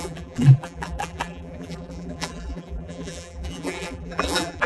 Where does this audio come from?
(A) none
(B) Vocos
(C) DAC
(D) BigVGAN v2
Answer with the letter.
D